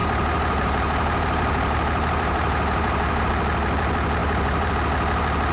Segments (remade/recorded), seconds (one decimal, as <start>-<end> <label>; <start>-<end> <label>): 0.0-3.3 remade; 3.3-4.2 recorded; 4.2-4.7 remade; 4.7-5.5 recorded